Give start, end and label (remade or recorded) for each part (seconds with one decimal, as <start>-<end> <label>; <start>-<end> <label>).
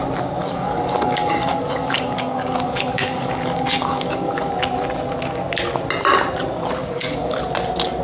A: 0.0-0.4 recorded; 0.4-4.5 remade; 4.5-6.8 recorded; 6.8-7.4 remade; 7.4-8.0 recorded